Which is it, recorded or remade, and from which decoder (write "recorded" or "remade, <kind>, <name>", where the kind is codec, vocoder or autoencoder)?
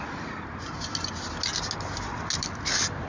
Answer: recorded